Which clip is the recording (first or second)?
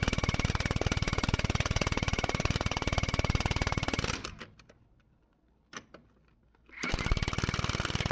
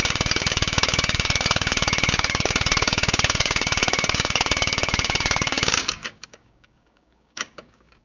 first